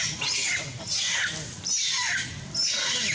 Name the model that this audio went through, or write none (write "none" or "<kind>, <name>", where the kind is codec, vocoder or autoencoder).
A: none